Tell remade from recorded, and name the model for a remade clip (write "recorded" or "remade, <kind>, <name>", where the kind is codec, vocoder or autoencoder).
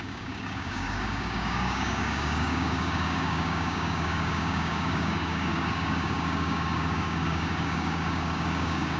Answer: remade, codec, DAC